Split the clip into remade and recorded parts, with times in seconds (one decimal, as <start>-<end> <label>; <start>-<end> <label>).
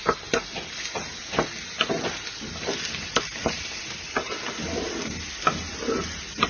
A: 0.0-3.4 recorded; 3.4-4.3 remade; 4.3-6.5 recorded